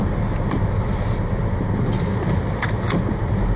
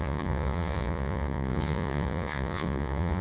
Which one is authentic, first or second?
first